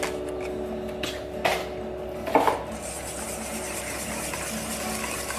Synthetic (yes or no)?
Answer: no